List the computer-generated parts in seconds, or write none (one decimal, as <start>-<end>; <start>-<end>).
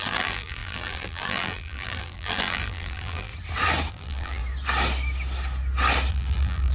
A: 0.0-3.3; 3.9-4.4; 6.1-6.7